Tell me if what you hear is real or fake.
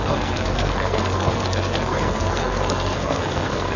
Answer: fake